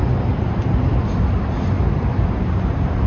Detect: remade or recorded recorded